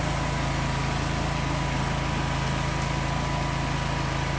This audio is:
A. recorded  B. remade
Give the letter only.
A